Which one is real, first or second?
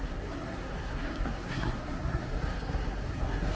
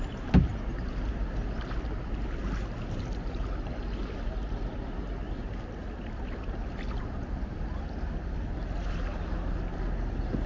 second